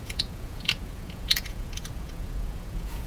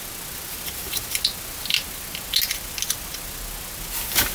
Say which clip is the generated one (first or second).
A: first